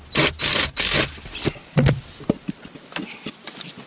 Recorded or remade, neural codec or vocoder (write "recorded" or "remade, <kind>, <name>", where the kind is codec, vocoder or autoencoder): recorded